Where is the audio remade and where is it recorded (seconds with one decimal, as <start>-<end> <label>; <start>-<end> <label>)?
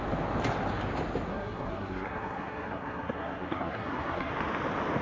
0.0-1.3 recorded; 1.3-4.3 remade; 4.3-5.0 recorded